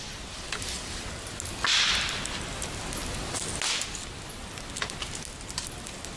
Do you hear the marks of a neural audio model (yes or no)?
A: no